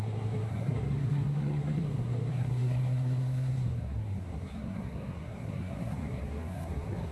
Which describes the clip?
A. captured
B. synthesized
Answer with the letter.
B